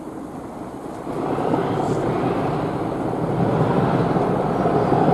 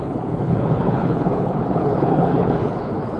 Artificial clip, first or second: second